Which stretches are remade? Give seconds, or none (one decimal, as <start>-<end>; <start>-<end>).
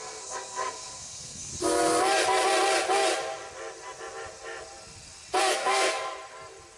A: 0.0-1.5; 5.4-5.9